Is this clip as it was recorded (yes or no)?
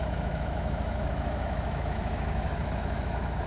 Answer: no